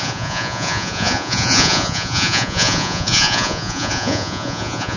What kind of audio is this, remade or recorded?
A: remade